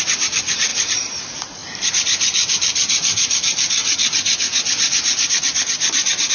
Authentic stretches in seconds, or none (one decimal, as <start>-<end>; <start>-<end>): 3.8-6.3